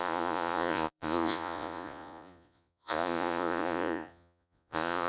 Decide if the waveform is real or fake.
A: fake